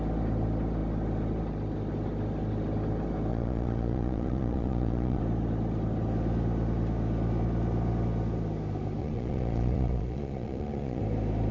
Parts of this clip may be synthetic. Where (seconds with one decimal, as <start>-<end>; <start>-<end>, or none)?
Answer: 3.3-5.2; 9.0-11.0